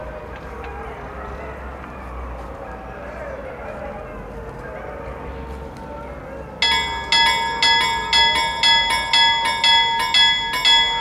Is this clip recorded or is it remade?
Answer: recorded